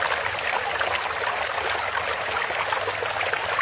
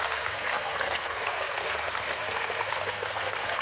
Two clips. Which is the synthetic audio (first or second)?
second